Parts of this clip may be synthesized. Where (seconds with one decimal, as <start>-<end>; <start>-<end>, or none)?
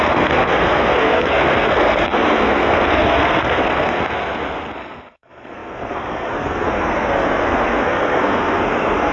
0.0-9.1